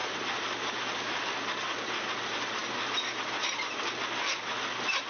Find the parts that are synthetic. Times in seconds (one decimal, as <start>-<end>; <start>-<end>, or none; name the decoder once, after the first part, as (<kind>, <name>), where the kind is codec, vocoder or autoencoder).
0.0-1.4 (vocoder, BigVGAN v2)